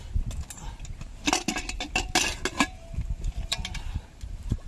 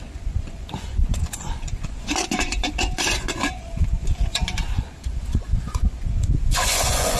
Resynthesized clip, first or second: second